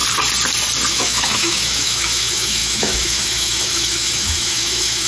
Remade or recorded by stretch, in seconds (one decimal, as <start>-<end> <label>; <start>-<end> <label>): 0.0-0.9 recorded; 0.9-5.1 remade

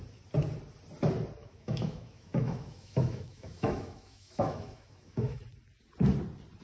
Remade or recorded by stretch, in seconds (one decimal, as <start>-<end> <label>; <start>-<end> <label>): 0.0-1.4 recorded; 1.4-5.4 remade; 5.4-6.6 recorded

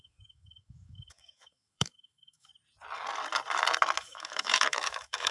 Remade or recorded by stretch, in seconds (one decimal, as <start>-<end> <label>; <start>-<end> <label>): 0.0-2.5 remade; 2.5-4.0 recorded; 4.0-5.3 remade

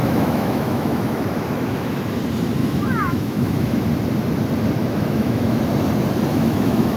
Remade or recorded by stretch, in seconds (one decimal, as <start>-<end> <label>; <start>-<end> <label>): 0.0-2.2 remade; 2.2-2.6 recorded; 2.6-3.9 remade; 3.9-4.8 recorded; 4.8-5.6 remade; 5.6-6.3 recorded; 6.3-7.0 remade